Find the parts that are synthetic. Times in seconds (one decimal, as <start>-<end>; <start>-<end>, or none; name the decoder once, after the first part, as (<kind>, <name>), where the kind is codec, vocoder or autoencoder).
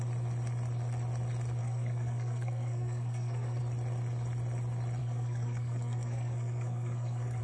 1.6-3.6 (codec, SNAC); 5.0-7.4